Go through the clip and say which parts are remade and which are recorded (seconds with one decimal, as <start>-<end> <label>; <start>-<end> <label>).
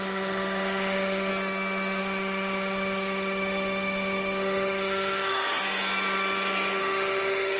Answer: 0.0-1.3 remade; 1.3-2.0 recorded; 2.0-5.6 remade; 5.6-6.8 recorded; 6.8-7.6 remade